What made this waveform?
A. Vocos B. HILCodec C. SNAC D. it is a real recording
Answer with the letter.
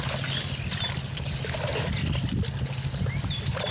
D